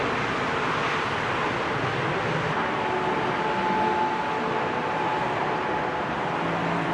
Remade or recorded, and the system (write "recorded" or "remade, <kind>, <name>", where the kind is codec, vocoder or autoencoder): recorded